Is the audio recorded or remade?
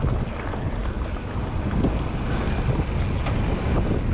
recorded